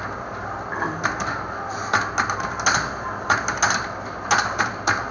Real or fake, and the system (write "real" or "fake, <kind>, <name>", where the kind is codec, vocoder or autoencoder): real